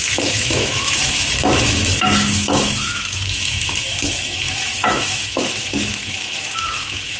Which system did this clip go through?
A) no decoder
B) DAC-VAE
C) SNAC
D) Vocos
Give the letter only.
B